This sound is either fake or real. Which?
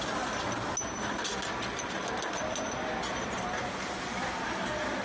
real